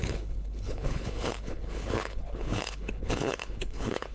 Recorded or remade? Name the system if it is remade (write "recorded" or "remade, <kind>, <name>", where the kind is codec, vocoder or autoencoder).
remade, codec, HILCodec